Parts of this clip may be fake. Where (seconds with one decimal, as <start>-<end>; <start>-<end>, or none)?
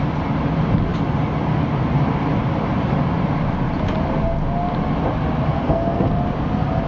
5.6-6.1